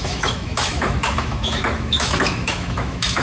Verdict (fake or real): fake